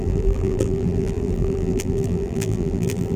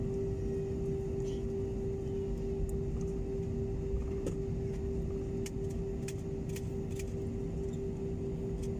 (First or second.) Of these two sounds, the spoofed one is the first